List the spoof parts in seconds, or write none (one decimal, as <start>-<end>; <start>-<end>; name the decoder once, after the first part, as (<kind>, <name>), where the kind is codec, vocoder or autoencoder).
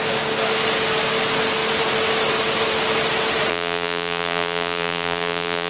3.5-5.7 (vocoder, BigVGAN v2)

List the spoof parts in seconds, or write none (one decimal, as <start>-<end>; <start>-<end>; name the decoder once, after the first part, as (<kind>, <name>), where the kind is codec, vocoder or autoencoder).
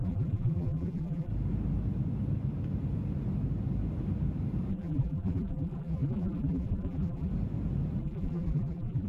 0.0-1.3 (vocoder, BigVGAN v2); 4.7-7.3; 8.0-9.1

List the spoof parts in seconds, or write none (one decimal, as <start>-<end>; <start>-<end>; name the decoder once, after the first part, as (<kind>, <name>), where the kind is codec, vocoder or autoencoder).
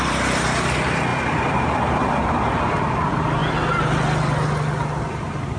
0.0-3.4 (vocoder, BigVGAN v2); 5.0-5.6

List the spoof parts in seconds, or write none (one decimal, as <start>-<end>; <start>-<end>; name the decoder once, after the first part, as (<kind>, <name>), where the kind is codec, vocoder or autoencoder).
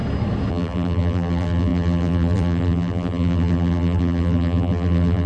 0.5-5.3 (vocoder, BigVGAN v2)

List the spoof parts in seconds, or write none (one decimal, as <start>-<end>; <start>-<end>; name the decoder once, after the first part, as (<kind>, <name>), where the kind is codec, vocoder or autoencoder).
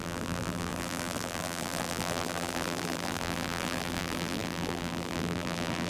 0.0-5.9 (vocoder, BigVGAN v2)